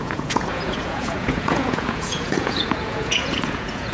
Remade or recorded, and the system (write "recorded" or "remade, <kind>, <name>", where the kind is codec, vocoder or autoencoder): remade, vocoder, Vocos